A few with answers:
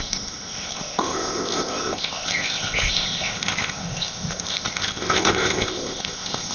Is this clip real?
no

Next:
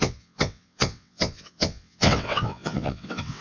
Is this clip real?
no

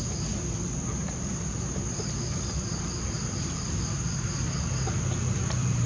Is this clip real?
no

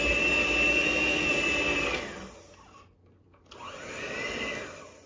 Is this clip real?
yes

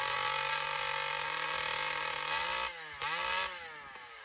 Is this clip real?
yes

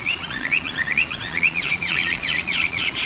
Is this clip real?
no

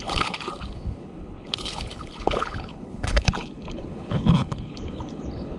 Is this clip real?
no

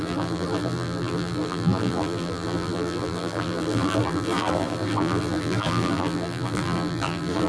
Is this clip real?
no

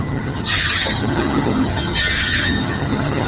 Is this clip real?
no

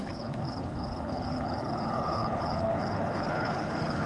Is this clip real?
no